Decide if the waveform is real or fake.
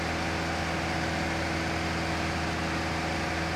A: real